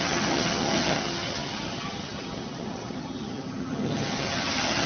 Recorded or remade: remade